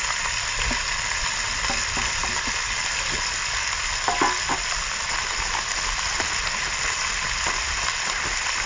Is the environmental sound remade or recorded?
recorded